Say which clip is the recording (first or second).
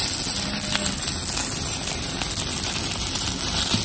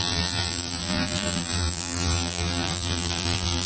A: first